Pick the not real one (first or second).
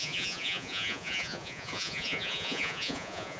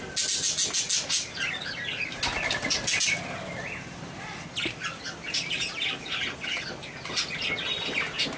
first